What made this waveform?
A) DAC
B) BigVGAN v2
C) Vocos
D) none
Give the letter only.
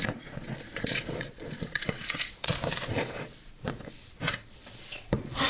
C